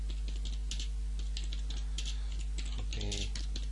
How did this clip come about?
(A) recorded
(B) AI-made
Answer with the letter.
A